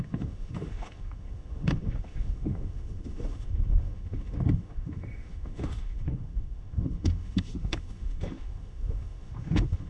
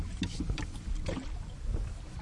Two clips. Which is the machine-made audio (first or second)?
first